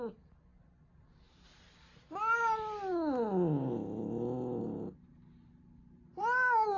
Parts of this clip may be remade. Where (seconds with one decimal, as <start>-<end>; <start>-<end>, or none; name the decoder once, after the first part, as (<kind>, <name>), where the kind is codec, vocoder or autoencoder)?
none